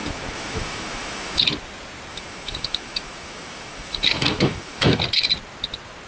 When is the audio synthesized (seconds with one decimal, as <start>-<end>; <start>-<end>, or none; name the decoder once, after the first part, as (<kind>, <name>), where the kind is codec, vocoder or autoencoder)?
0.0-1.4 (autoencoder, DAC-VAE); 2.1-5.0